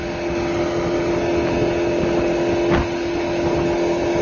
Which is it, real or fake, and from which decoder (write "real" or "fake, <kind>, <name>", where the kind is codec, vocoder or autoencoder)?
real